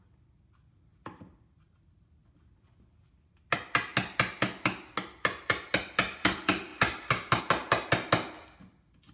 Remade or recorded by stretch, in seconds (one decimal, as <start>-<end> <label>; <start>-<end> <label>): 0.0-9.1 recorded